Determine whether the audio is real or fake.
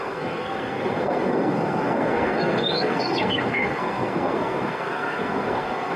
fake